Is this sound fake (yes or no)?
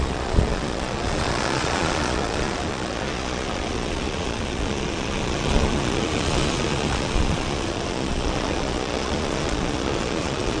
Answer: yes